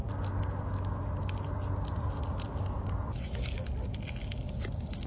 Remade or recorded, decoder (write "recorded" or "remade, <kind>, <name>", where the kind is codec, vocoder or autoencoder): recorded